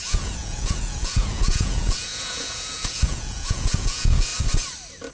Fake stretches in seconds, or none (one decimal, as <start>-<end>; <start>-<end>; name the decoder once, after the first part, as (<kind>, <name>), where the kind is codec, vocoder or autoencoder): 0.0-4.3 (vocoder, Vocos)